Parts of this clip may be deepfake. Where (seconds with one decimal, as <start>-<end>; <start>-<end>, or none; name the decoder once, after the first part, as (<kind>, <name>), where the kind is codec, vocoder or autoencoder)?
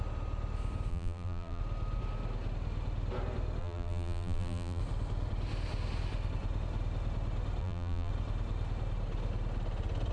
0.9-1.6 (vocoder, BigVGAN v2); 3.6-4.8; 7.6-8.1